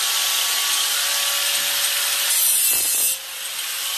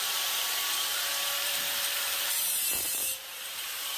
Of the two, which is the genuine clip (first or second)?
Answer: first